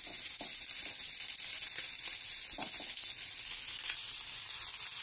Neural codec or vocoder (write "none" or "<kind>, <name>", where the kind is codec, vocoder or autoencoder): none